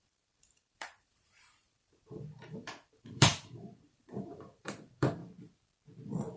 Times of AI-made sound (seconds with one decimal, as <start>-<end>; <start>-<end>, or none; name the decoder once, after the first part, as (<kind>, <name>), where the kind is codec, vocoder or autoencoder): 0.0-5.2 (vocoder, BigVGAN v2)